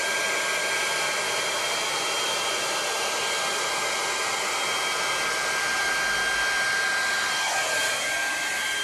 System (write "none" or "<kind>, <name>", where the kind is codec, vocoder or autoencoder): none